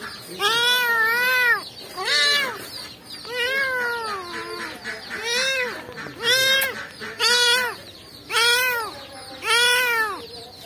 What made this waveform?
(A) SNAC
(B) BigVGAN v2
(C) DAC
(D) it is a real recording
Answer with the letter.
D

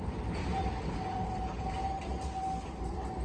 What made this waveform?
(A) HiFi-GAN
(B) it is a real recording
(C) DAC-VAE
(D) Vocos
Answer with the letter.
B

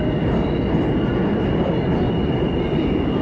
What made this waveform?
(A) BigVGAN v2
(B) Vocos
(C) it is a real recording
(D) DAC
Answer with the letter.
C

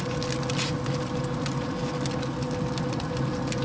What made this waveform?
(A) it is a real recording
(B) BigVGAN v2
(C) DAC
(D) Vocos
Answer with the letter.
A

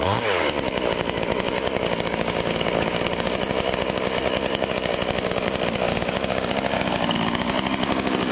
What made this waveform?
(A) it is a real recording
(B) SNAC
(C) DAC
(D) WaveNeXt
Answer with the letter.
C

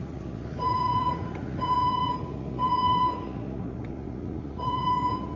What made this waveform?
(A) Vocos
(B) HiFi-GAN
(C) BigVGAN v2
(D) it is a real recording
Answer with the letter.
A